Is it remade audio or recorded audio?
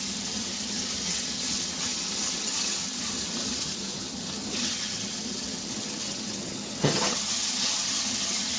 remade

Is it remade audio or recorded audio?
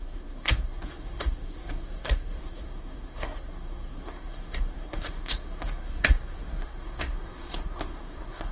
remade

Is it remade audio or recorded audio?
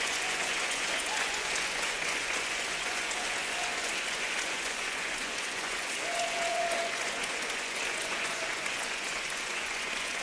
remade